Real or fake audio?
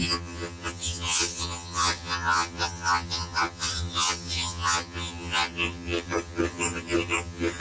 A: fake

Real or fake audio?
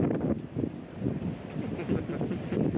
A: real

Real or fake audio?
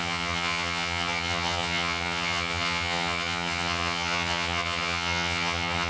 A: fake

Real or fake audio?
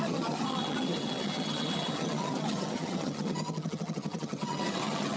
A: fake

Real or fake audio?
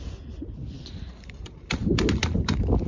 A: real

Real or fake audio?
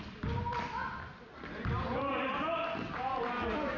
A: real